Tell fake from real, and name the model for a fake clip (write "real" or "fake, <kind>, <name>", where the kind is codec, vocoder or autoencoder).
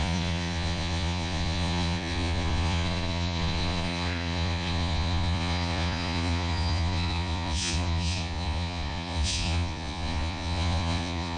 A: fake, vocoder, Vocos